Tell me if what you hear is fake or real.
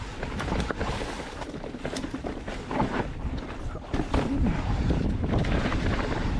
fake